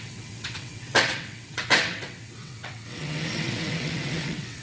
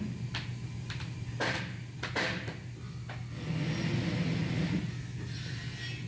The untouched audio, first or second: second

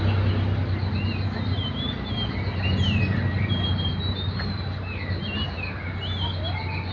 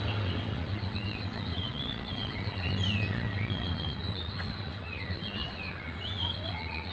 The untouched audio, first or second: first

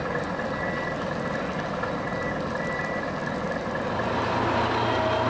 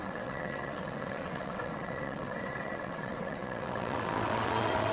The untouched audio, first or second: first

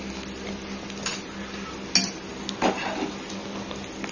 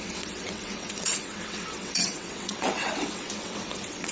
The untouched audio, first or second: first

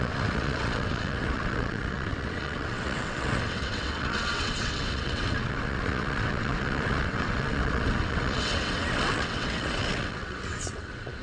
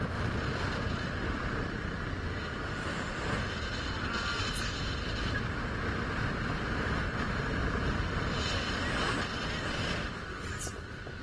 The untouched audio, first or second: second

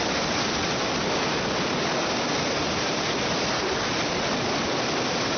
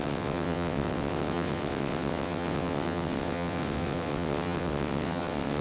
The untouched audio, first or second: first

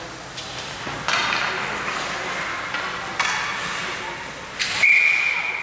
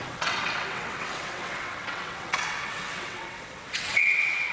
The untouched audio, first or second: first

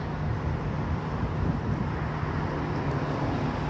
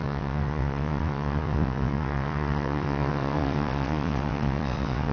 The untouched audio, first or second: first